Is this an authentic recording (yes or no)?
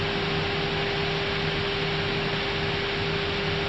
yes